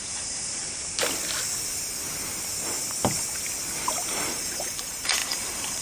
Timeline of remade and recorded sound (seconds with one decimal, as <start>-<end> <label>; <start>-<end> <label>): 0.0-0.6 remade; 0.6-4.1 recorded; 4.1-5.8 remade